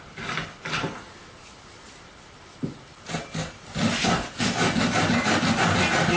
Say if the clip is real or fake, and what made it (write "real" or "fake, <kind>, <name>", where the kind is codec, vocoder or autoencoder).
real